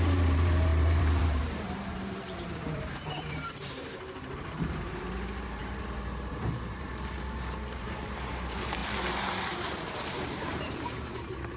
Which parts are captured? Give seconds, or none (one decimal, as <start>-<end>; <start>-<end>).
6.9-7.8; 8.8-9.5